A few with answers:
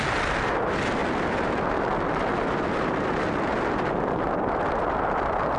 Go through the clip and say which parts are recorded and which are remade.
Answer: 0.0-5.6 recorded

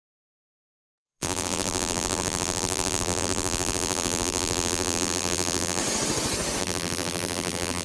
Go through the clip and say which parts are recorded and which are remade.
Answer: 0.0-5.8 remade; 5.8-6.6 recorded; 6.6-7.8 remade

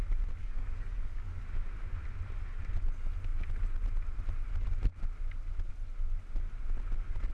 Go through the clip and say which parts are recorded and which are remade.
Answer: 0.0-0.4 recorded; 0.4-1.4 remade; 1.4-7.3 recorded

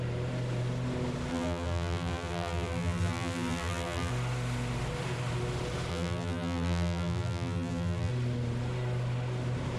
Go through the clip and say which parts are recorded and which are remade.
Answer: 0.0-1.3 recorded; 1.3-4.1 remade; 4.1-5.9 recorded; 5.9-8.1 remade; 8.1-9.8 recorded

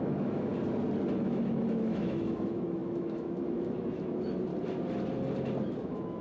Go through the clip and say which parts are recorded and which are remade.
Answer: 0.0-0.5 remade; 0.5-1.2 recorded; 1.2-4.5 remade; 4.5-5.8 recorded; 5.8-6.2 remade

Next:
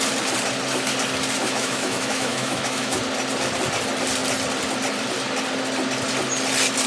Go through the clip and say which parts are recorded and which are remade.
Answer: 0.0-1.4 recorded; 1.4-3.0 remade; 3.0-6.9 recorded